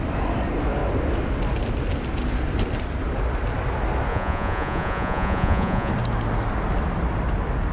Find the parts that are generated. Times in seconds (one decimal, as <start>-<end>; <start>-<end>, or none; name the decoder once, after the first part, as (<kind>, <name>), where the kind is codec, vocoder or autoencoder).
4.1-5.9 (vocoder, Vocos)